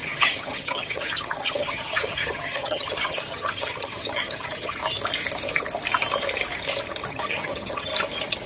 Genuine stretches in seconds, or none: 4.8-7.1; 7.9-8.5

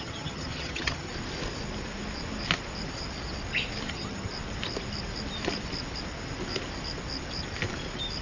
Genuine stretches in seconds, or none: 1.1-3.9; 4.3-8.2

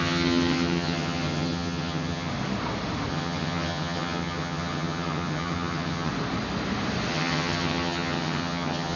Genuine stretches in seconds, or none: 2.3-3.1; 6.1-7.1

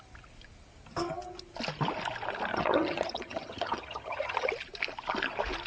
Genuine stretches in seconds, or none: 0.0-2.5; 4.5-5.7